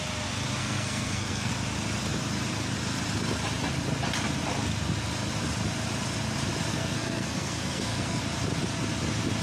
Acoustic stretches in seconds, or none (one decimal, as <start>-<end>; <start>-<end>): 0.0-0.6; 1.5-6.7; 8.2-9.4